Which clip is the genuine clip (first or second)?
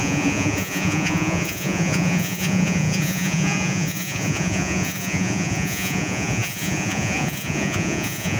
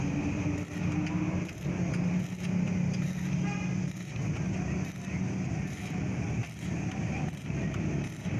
second